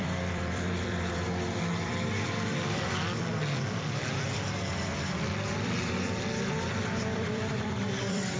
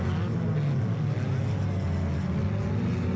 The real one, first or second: second